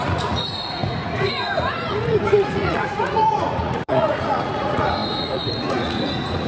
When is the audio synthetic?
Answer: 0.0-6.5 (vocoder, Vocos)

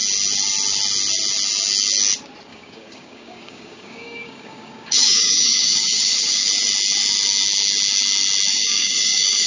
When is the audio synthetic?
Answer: 2.5-6.5 (codec, DAC); 8.5-9.5

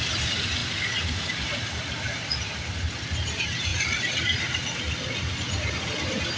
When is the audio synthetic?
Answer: 0.6-1.2 (vocoder, BigVGAN v2); 2.3-2.9